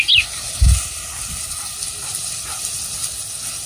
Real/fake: real